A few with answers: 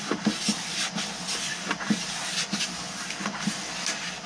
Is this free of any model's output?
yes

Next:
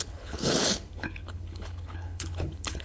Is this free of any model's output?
no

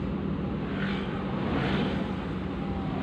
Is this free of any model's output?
yes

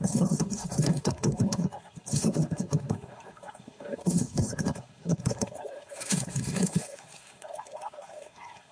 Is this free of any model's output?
no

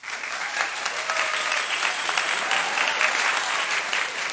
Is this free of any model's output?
no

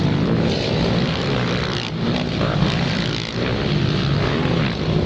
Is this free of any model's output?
yes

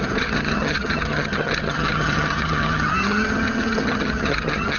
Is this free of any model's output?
no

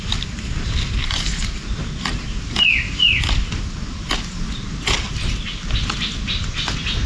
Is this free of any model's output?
yes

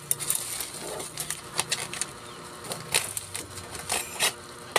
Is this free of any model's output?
yes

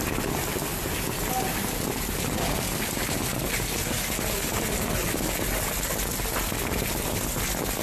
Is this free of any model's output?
yes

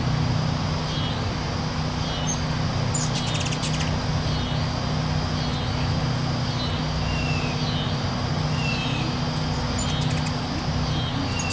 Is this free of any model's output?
yes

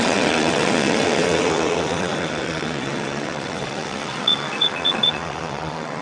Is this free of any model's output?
no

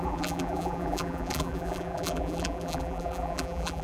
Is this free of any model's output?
no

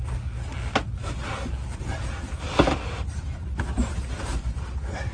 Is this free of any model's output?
yes